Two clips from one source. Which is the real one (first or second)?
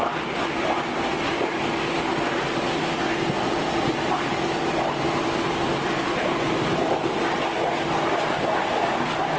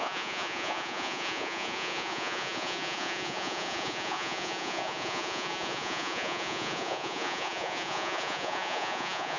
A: first